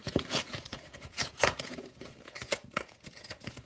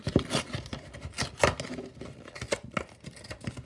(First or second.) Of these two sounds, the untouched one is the second